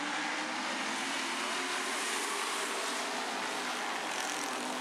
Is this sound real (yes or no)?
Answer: yes